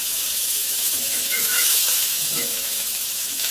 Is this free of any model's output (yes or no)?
no